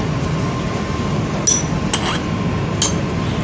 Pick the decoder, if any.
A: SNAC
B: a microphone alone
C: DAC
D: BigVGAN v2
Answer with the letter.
B